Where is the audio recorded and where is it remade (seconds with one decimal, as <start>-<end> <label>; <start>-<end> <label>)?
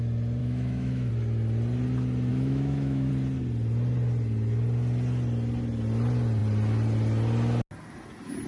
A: 0.0-0.4 recorded; 0.4-1.1 remade; 1.1-2.3 recorded; 2.3-3.1 remade; 3.1-8.5 recorded